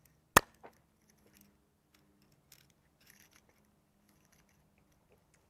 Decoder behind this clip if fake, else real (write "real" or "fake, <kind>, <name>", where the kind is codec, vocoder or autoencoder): real